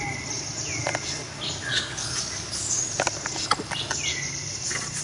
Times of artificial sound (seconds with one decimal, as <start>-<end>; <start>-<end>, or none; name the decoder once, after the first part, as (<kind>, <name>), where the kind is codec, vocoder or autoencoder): 1.7-2.8 (codec, DAC)